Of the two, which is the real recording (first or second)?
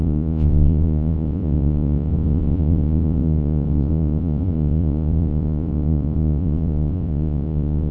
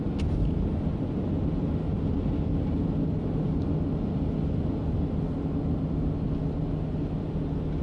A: second